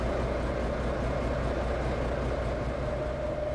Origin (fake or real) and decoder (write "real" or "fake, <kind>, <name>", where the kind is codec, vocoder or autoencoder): real